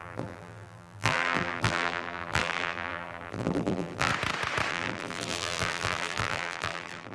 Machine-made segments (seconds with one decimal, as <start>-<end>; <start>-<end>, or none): 0.0-4.1; 4.7-7.1